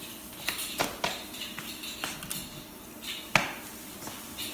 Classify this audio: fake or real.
real